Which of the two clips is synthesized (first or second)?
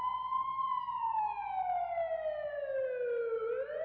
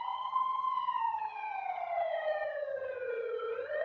second